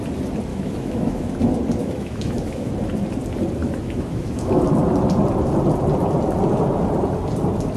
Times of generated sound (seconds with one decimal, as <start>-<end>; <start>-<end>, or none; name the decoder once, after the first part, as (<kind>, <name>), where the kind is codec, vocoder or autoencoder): 0.5-1.3 (autoencoder, DAC-VAE); 1.8-2.7; 3.6-4.6